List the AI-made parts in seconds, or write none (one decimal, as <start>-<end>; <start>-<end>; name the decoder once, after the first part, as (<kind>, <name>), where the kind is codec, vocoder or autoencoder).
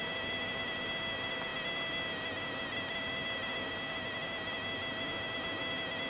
none